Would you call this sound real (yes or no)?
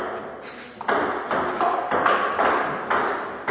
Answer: yes